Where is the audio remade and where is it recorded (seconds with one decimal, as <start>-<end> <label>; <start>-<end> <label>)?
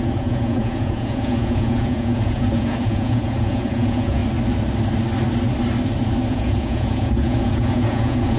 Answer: 0.0-4.2 remade; 4.2-6.3 recorded; 6.3-8.4 remade